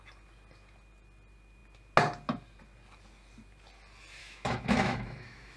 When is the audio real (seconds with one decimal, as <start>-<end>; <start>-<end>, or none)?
0.0-4.2